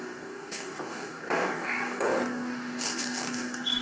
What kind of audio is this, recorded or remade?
remade